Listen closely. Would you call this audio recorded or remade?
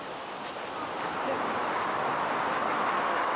recorded